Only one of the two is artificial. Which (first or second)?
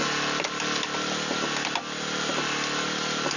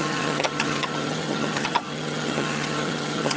second